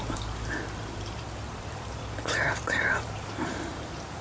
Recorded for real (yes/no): no